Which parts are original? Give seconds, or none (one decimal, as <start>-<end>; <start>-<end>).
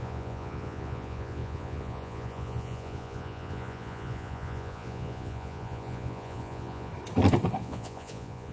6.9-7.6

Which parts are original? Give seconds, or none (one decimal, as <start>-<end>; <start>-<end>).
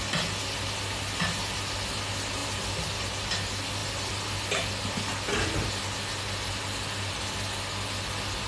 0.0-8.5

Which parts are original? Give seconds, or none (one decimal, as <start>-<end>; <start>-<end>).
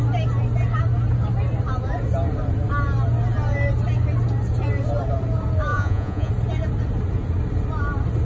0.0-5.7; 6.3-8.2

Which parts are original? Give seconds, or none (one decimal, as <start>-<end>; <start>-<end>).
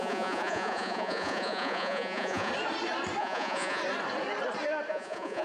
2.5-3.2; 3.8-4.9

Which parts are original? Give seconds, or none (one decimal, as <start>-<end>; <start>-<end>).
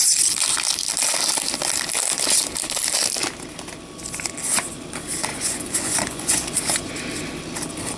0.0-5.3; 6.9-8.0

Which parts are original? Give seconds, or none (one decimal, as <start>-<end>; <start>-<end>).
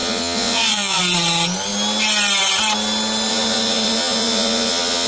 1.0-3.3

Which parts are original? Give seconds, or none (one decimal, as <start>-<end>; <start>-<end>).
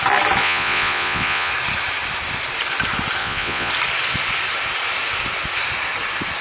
0.0-0.4; 1.5-3.2; 3.7-6.4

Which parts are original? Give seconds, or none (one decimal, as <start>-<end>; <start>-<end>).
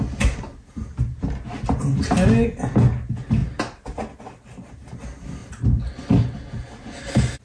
0.0-7.4